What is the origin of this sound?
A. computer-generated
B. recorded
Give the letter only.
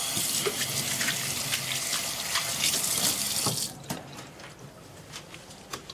B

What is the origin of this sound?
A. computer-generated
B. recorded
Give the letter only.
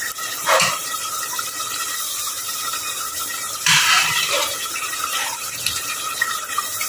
A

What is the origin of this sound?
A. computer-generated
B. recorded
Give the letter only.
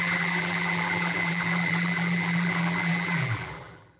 A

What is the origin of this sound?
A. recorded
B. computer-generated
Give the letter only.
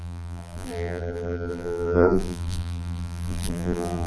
B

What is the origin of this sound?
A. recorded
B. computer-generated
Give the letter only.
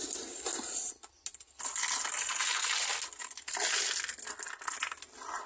A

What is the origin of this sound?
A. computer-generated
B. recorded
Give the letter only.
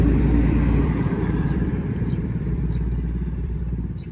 A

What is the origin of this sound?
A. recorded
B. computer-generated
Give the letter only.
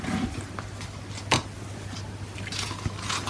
A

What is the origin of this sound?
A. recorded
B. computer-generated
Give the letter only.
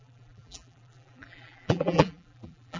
B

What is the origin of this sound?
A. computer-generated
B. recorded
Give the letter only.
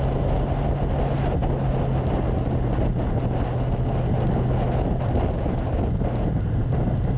B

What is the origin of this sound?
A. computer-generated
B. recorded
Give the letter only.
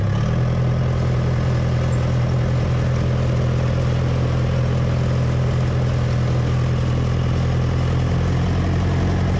B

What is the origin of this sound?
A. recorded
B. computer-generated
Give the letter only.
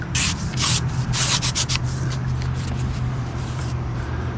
B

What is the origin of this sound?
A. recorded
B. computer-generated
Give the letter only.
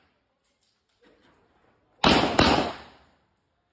A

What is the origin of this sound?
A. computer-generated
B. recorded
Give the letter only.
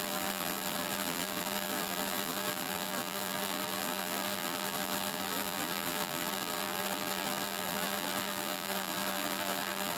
A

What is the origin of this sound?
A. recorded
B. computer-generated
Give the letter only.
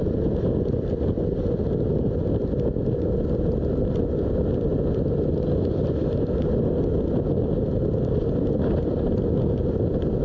A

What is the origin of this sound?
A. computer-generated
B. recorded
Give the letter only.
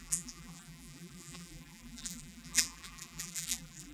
A